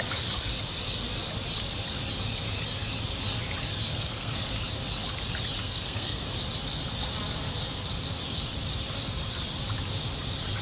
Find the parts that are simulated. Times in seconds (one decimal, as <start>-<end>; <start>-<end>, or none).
3.9-4.5; 5.6-6.2

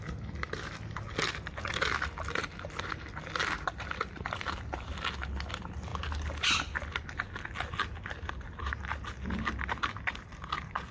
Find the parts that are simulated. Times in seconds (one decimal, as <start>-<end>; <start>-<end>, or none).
none

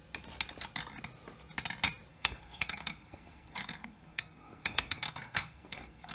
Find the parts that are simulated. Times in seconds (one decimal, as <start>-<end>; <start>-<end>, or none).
2.1-6.1

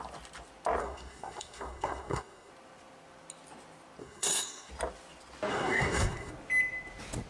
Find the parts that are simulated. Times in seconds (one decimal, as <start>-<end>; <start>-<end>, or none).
0.8-2.5; 4.0-4.7; 5.5-6.3

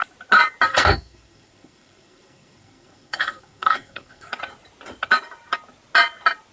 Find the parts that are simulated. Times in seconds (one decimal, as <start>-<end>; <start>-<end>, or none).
0.7-4.3

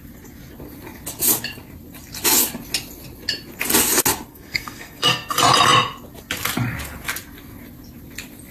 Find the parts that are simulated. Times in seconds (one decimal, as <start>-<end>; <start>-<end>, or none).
4.3-5.3